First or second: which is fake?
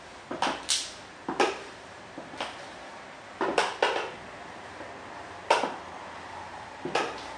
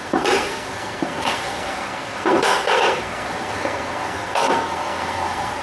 second